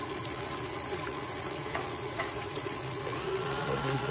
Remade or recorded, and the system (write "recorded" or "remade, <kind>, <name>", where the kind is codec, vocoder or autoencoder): remade, vocoder, Vocos